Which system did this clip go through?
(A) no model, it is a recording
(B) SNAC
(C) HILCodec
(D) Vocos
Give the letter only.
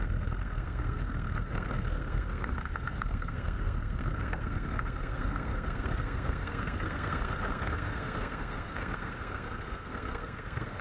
B